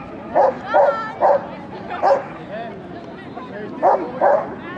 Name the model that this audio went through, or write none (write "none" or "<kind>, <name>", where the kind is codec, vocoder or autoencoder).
none